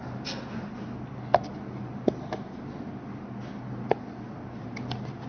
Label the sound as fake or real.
real